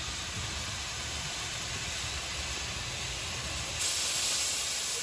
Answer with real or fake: real